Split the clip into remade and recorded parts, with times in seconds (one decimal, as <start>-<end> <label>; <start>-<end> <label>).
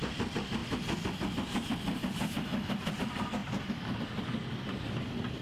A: 0.0-5.4 recorded